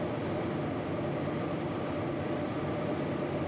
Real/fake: real